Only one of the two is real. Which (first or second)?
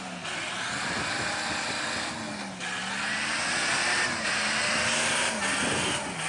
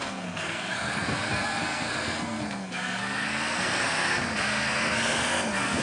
first